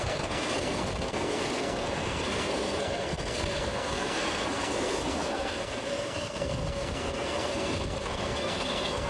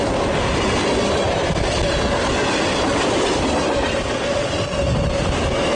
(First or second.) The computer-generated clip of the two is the first